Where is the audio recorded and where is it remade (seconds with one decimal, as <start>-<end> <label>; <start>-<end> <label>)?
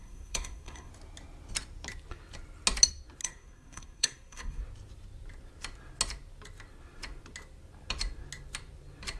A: 0.0-0.9 remade; 0.9-3.2 recorded; 3.2-4.6 remade; 4.6-9.2 recorded